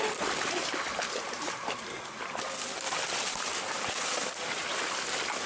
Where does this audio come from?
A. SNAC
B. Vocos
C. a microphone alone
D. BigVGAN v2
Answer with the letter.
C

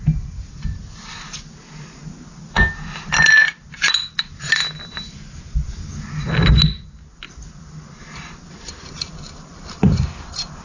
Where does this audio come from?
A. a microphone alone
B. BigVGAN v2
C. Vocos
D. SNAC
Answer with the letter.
A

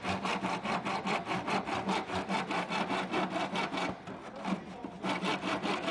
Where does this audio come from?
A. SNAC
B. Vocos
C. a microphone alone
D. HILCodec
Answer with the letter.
C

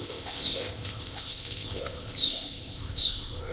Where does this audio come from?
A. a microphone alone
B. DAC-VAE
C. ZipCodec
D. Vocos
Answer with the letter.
C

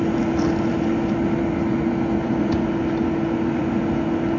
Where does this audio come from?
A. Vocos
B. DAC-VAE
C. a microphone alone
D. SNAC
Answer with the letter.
C